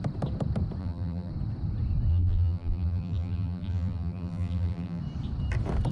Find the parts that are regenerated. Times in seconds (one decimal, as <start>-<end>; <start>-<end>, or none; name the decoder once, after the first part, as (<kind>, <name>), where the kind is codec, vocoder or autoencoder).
0.8-1.3 (vocoder, BigVGAN v2); 2.1-5.0